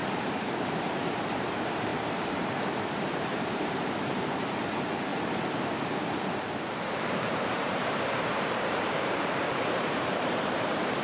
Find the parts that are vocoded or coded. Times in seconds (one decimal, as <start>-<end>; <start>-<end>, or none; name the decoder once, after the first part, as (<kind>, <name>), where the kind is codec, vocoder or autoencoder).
0.0-11.0 (vocoder, BigVGAN v2)